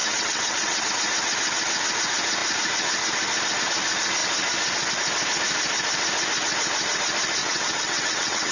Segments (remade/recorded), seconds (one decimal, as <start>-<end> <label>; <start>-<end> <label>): 0.0-0.9 remade; 0.9-7.4 recorded; 7.4-8.5 remade